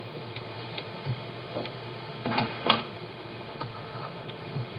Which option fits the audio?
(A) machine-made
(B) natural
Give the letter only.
A